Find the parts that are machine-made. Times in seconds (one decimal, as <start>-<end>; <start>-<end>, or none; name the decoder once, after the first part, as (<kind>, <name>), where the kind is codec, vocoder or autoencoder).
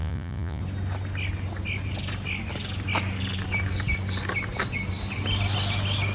0.0-0.6 (vocoder, Vocos)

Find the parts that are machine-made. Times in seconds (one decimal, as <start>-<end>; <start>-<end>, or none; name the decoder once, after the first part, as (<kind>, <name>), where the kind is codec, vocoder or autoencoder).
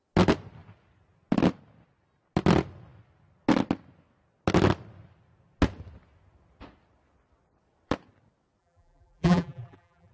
8.6-10.1 (vocoder, BigVGAN v2)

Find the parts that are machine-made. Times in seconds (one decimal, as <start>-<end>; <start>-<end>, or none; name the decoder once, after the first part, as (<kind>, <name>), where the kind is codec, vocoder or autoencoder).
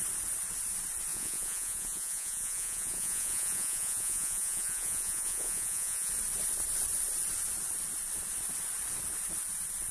1.1-6.1 (vocoder, Vocos)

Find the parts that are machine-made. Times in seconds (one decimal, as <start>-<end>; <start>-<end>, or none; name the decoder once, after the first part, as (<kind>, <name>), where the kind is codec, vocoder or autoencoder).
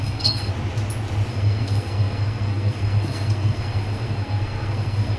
0.0-0.5 (codec, SNAC); 1.3-5.2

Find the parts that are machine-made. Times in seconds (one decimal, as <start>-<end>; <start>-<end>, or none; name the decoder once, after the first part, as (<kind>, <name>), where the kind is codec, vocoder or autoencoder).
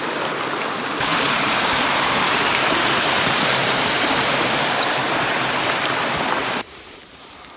1.1-3.8 (vocoder, BigVGAN v2); 6.4-7.0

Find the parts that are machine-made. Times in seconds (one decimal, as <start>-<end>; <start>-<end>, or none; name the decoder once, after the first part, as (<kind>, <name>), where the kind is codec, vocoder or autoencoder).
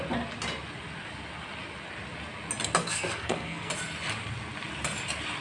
2.8-3.7 (codec, SNAC)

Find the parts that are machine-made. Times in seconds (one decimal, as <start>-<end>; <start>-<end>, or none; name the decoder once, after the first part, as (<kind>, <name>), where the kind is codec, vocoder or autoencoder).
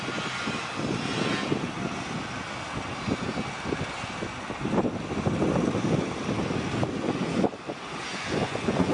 8.1-8.9 (vocoder, Vocos)